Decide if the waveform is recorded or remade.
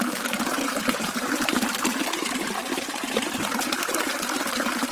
remade